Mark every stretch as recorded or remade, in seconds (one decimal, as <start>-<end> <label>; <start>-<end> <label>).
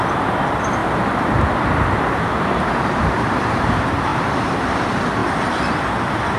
0.0-0.8 remade; 0.8-2.0 recorded; 2.0-5.2 remade; 5.2-6.4 recorded